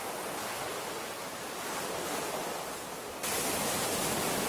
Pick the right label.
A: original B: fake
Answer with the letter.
A